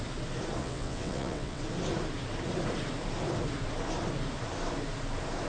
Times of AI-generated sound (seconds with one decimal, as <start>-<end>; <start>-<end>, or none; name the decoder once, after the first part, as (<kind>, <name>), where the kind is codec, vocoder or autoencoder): 0.6-1.6 (vocoder, WaveNeXt)